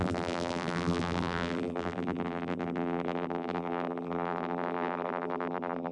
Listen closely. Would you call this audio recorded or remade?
remade